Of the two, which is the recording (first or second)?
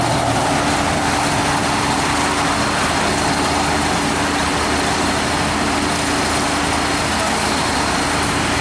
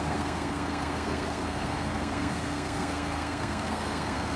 first